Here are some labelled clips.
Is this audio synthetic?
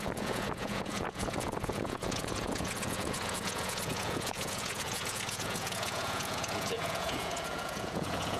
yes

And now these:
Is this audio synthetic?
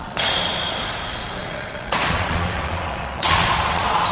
yes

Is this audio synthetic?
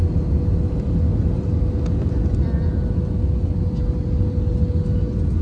no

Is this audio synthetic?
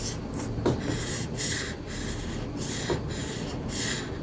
no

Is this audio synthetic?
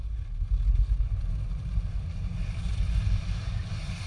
no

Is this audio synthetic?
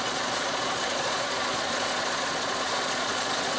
yes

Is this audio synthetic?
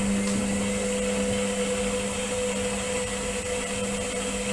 no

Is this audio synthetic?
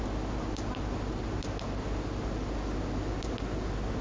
no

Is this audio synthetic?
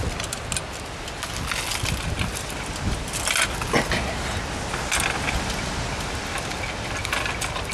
no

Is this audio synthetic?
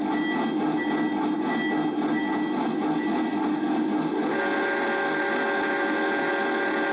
no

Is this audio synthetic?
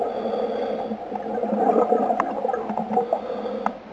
no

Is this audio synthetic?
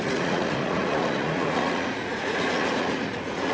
yes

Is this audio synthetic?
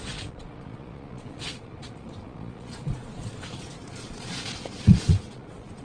yes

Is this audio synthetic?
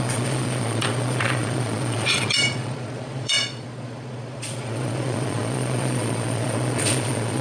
yes